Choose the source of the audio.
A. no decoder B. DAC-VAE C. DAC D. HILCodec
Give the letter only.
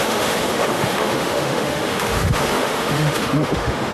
B